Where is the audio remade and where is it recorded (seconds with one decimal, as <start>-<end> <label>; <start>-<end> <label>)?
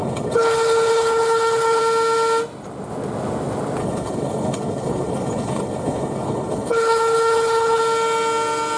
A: 0.0-1.8 remade; 1.8-3.8 recorded; 3.8-7.8 remade; 7.8-8.8 recorded